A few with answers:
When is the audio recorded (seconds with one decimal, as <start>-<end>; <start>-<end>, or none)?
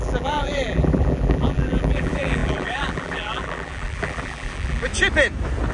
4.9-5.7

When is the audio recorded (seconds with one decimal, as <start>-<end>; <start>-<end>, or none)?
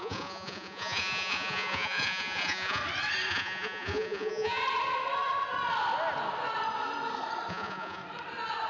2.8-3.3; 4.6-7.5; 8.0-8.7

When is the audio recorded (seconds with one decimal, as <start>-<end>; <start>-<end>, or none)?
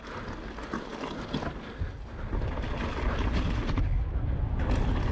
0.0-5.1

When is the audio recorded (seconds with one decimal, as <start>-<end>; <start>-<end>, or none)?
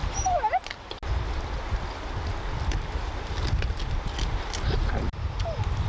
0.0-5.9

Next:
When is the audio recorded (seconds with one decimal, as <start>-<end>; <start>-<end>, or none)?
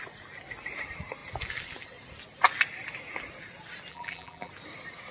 0.0-3.9; 4.5-5.1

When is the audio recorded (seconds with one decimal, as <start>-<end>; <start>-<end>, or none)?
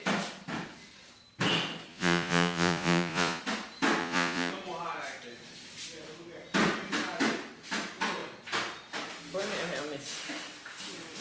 0.0-1.9; 3.4-4.0; 4.5-11.2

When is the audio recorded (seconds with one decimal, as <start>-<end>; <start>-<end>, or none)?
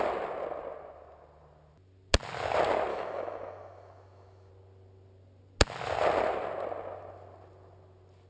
0.0-2.9; 4.5-8.3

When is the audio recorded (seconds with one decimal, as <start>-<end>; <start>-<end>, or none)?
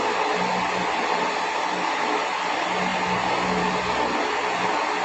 0.0-5.0